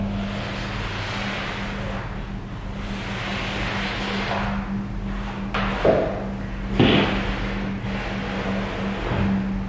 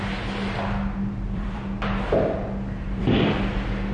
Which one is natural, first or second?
first